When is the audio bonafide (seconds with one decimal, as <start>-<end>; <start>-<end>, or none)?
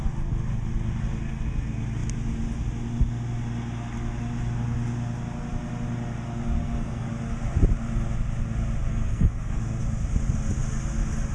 0.0-6.6; 7.1-8.9; 9.6-11.3